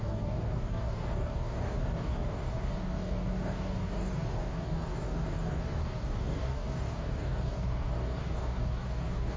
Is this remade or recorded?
remade